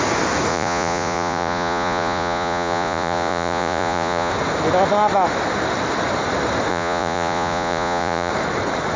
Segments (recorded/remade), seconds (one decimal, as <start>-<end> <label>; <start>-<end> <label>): 0.0-0.5 recorded; 0.5-4.3 remade; 4.3-6.7 recorded; 6.7-8.3 remade; 8.3-9.0 recorded